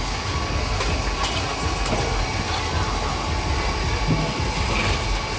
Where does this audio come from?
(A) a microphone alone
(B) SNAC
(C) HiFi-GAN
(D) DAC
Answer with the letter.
A